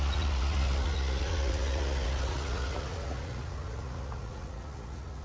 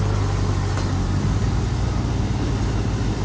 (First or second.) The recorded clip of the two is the second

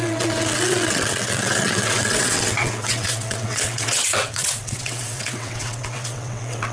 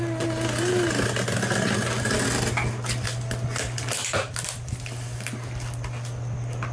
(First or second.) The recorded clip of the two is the second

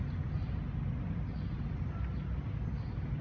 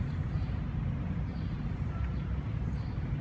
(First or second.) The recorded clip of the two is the first